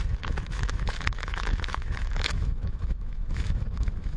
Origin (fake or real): fake